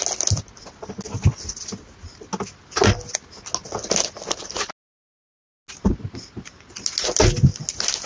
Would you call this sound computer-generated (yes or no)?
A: no